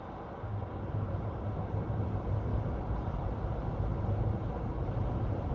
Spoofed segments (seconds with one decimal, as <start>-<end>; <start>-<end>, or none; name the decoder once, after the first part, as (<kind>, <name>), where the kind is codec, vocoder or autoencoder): 0.5-1.1 (codec, DAC)